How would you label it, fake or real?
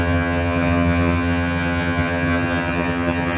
fake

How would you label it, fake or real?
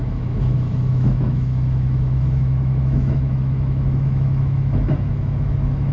fake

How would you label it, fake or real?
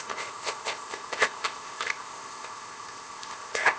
fake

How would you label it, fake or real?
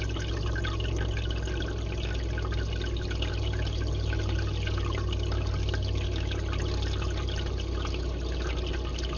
real